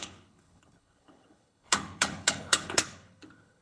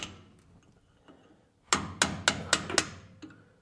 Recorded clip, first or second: second